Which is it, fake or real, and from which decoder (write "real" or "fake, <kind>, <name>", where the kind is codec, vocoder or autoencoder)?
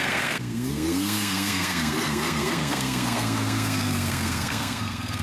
fake, codec, SNAC